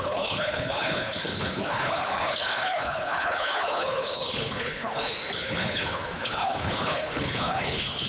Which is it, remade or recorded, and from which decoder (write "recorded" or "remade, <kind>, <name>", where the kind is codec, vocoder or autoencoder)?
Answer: remade, codec, HILCodec